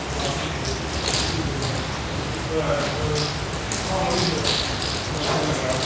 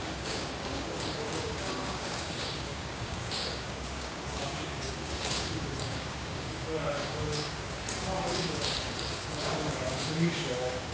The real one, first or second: first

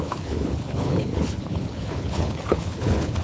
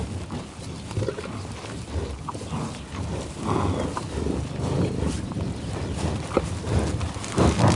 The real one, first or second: second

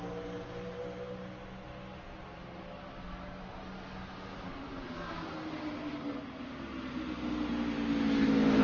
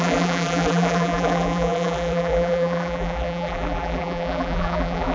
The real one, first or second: first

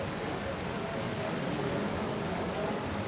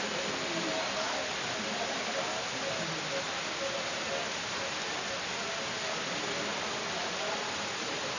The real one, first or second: second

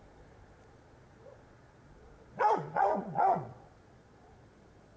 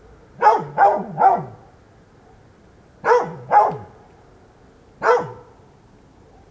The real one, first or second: second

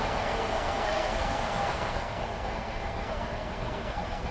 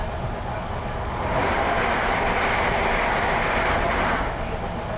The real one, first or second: second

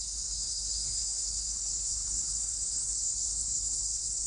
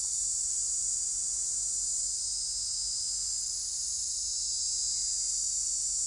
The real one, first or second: second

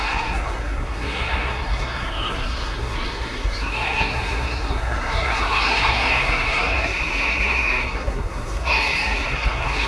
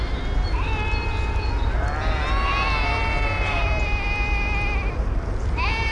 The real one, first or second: second